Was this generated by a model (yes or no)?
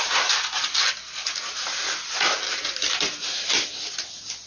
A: no